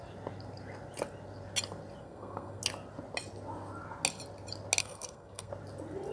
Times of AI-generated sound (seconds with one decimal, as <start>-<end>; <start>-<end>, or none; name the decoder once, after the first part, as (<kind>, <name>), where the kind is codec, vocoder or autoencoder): 2.0-2.6 (codec, SNAC); 4.8-5.5